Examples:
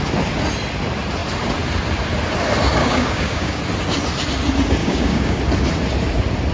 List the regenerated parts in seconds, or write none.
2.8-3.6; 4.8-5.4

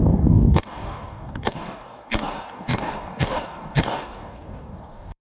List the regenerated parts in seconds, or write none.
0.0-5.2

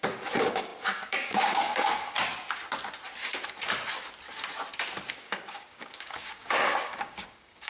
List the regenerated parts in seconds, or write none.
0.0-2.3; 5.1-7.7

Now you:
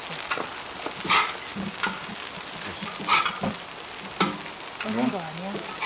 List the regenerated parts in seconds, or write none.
1.5-2.3